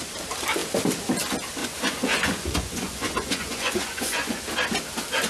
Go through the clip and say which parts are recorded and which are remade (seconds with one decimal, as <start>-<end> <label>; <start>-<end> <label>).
0.0-1.6 recorded; 1.6-4.4 remade; 4.4-5.3 recorded